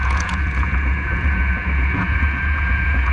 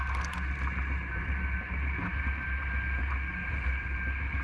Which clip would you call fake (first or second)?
first